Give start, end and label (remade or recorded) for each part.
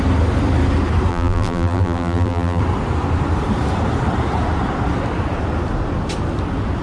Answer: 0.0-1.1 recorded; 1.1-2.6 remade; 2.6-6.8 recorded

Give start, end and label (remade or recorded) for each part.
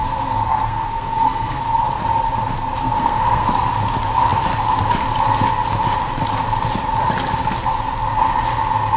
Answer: 0.0-1.6 remade; 1.6-2.8 recorded; 2.8-3.5 remade; 3.5-9.0 recorded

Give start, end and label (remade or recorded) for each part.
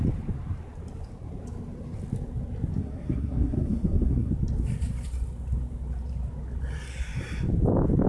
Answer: 0.0-2.8 recorded; 2.8-4.3 remade; 4.3-8.1 recorded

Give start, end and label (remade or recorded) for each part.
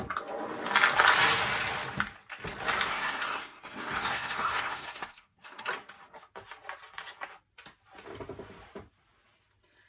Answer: 0.0-2.9 recorded; 2.9-5.7 remade; 5.7-9.9 recorded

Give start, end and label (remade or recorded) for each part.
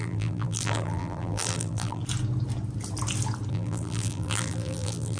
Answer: 0.0-2.0 remade; 2.0-3.5 recorded; 3.5-5.2 remade